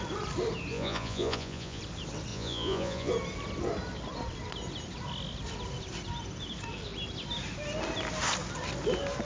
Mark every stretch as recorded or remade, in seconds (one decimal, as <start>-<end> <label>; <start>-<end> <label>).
0.0-0.7 recorded; 0.7-1.8 remade; 1.8-2.3 recorded; 2.3-3.1 remade; 3.1-9.2 recorded